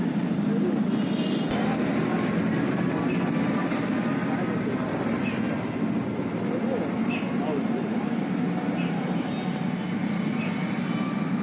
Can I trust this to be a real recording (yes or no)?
yes